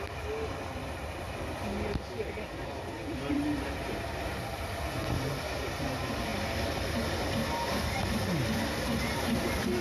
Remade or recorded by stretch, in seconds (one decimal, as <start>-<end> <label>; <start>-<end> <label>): 0.0-9.8 recorded